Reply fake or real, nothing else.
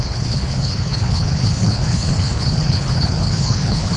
fake